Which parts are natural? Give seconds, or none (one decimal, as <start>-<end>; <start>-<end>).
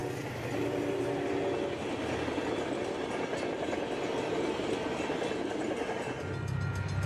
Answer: 0.0-7.1